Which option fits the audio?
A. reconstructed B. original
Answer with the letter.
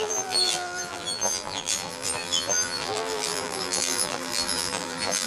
A